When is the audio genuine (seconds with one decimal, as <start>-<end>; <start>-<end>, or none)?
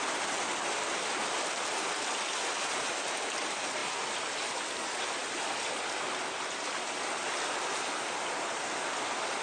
0.0-9.4